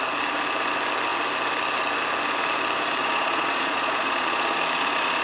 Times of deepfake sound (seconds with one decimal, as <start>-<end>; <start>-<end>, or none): 3.0-4.6